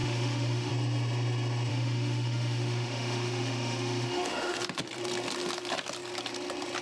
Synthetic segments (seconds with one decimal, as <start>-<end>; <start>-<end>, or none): 0.0-0.7; 1.7-4.6